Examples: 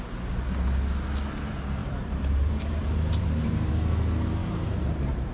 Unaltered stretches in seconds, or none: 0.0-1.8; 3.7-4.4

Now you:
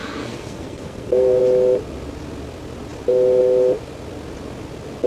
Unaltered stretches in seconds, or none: 1.4-5.1

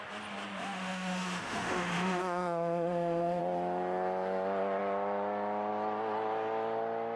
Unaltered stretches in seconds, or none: 0.0-0.6; 3.4-7.2